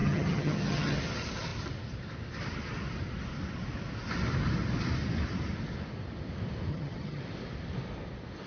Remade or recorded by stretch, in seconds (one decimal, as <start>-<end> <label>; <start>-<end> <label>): 0.0-1.0 remade; 1.0-6.7 recorded; 6.7-7.2 remade; 7.2-8.5 recorded